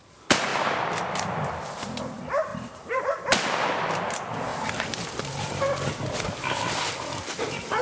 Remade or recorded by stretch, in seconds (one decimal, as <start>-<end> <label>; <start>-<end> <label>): 0.0-2.5 recorded; 2.5-3.2 remade; 3.2-4.5 recorded; 4.5-5.7 remade; 5.7-7.8 recorded